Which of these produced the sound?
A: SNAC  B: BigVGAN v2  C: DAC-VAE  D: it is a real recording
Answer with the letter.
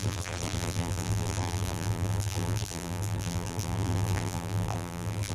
B